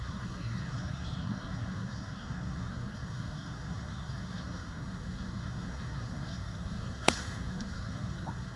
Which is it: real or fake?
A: fake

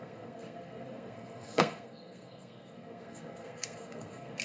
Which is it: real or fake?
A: fake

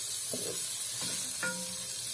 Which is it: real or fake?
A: real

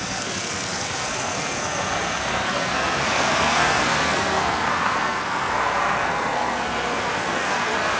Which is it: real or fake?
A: fake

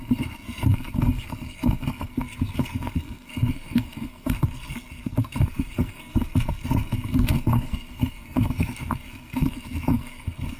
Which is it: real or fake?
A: fake